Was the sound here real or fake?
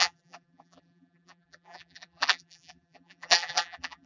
fake